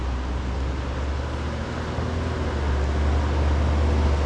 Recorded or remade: recorded